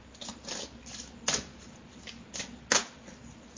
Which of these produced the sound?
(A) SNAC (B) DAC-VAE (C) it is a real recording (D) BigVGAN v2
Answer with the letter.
C